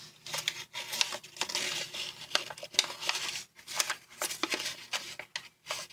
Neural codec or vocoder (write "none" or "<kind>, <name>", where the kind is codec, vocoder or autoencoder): none